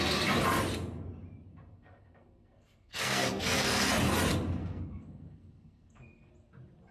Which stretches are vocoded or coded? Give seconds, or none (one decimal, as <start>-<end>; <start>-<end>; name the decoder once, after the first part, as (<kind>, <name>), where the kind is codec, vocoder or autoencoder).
1.5-3.8 (codec, SNAC); 4.6-6.3